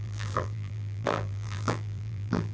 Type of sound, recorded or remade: remade